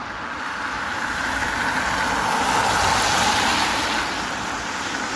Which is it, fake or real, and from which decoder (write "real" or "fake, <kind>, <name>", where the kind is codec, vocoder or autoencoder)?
real